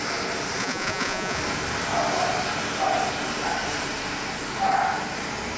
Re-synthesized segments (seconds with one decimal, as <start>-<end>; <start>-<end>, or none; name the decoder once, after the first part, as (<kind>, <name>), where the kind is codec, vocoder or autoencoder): 0.6-1.4 (vocoder, Vocos)